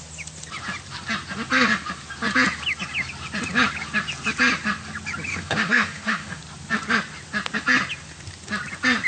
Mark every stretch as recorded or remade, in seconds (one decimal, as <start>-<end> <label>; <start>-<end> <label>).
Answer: 0.0-5.3 recorded; 5.3-6.4 remade; 6.4-9.1 recorded